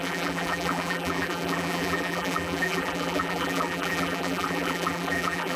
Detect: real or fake fake